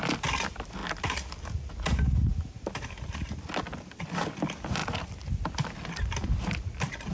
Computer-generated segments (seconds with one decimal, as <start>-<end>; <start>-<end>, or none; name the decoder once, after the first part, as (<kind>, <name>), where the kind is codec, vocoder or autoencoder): none